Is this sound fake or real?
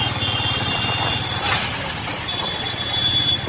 real